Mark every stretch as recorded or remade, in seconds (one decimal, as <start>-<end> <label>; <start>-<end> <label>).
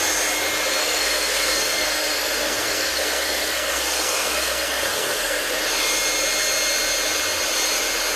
0.0-0.8 recorded; 0.8-5.5 remade; 5.5-8.2 recorded